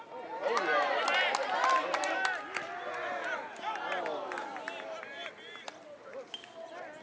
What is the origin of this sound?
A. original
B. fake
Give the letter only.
A